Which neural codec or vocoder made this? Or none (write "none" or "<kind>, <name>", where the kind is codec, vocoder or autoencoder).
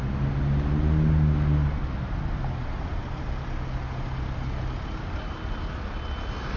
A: none